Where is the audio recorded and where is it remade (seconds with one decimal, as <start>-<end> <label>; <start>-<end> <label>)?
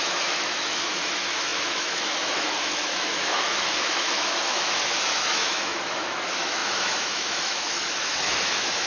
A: 0.0-8.9 remade